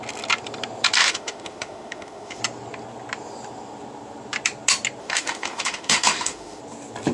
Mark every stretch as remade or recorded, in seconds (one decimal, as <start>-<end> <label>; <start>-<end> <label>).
0.0-1.0 recorded; 1.0-2.4 remade; 2.4-5.0 recorded; 5.0-6.6 remade; 6.6-7.1 recorded